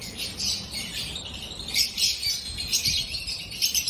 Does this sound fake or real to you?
real